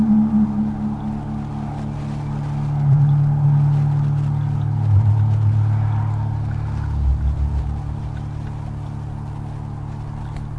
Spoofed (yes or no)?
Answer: no